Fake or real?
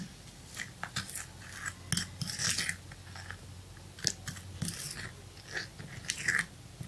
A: real